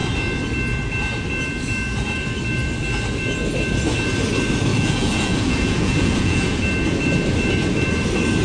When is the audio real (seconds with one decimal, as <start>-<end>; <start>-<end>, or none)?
0.0-4.7; 6.6-8.4

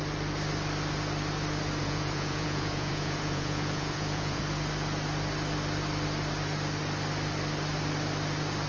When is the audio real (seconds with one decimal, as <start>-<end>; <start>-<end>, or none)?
0.0-1.8; 4.4-8.7

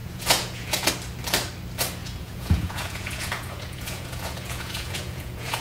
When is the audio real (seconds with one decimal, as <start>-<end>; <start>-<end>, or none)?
0.9-2.0

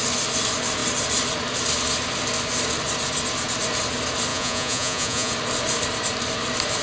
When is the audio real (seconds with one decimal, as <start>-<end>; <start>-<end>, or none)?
0.0-4.3; 5.3-6.8